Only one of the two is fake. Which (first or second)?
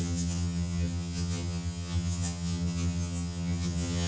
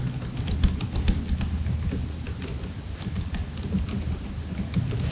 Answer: first